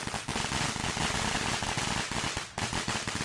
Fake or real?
real